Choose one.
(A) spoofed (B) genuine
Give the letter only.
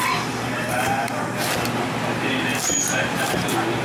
B